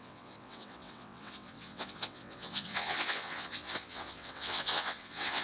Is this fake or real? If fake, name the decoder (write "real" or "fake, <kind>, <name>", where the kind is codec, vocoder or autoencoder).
fake, vocoder, WaveNeXt